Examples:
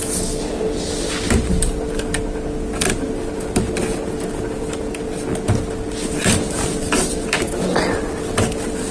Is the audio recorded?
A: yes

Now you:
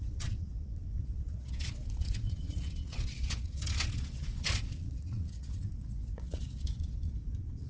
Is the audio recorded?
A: no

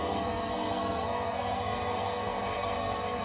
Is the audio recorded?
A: no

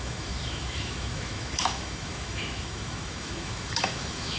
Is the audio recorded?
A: no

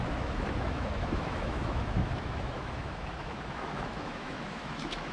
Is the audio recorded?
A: no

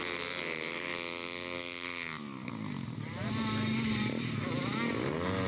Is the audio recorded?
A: yes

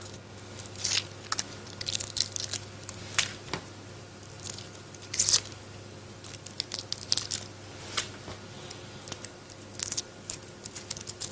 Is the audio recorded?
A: yes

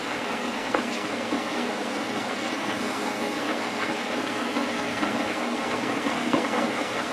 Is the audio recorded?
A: no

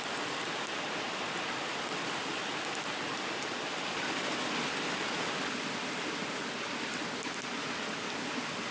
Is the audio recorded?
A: yes